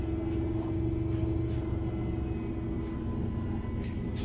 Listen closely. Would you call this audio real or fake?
real